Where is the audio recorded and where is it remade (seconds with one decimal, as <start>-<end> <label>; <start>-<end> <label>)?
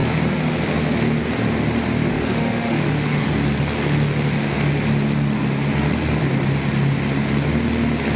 0.0-2.1 recorded; 2.1-3.3 remade; 3.3-8.2 recorded